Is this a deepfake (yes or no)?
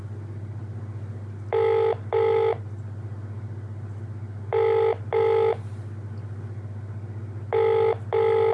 no